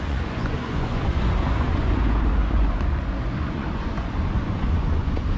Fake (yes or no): yes